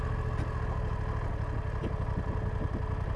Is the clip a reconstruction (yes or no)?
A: no